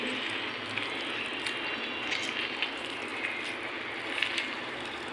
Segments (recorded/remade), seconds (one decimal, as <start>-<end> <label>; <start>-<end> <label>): 0.0-5.1 recorded